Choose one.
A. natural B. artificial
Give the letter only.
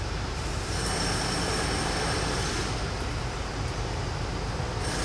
B